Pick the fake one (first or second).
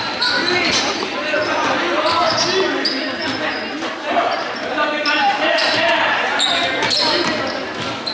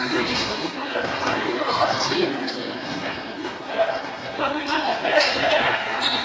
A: second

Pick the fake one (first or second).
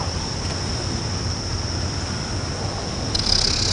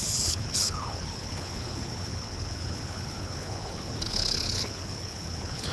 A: second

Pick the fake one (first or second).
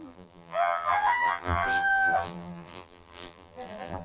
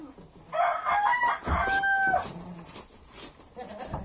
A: first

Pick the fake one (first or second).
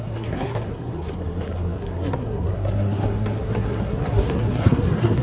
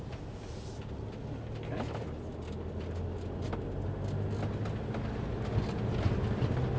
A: first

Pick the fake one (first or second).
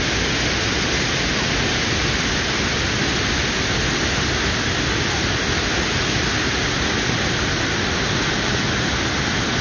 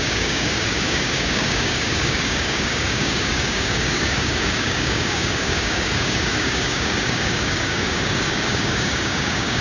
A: second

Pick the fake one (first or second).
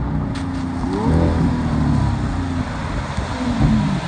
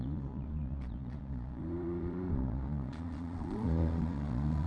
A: second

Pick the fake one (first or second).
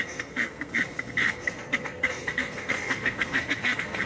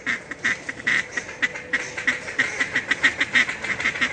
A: first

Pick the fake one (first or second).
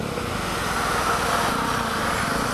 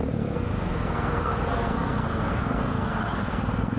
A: second